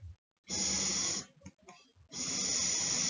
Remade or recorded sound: recorded